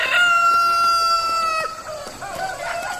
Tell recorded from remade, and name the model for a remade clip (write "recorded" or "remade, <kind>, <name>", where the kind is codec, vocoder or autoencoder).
recorded